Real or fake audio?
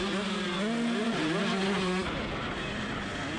real